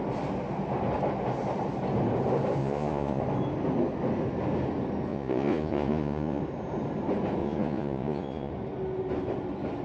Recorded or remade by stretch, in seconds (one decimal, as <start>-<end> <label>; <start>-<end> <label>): 0.0-2.6 recorded; 2.6-3.2 remade; 3.2-5.1 recorded; 5.1-6.4 remade; 6.4-7.4 recorded; 7.4-8.5 remade; 8.5-9.8 recorded